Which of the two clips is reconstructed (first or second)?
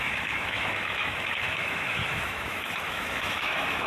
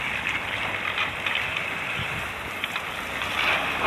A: first